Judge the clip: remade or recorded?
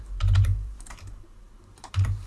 remade